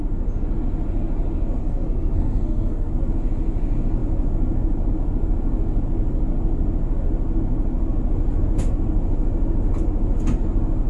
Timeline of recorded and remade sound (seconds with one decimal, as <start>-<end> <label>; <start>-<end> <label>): 0.0-1.6 recorded; 1.6-2.9 remade; 2.9-10.9 recorded